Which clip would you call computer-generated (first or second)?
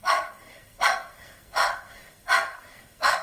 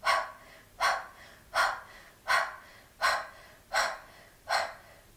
first